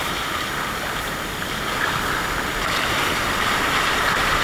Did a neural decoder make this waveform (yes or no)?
no